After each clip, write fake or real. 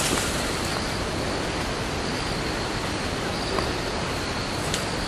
real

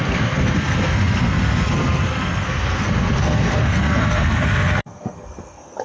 fake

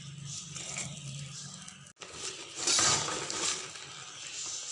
real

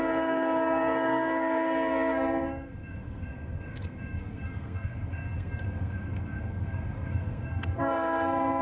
fake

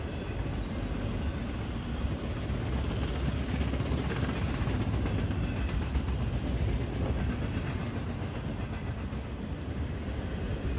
real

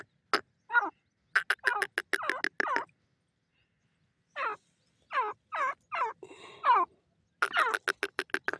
real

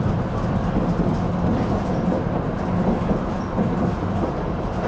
real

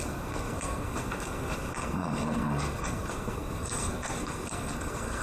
fake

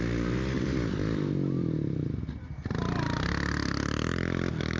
real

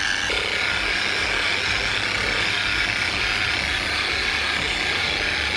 real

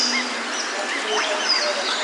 real